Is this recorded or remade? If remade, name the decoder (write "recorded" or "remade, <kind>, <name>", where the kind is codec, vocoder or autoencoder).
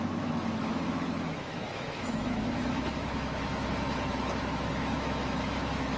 remade, autoencoder, DAC-VAE